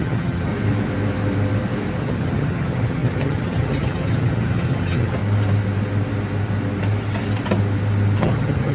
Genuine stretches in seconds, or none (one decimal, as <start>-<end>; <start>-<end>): 0.5-2.0; 5.2-8.2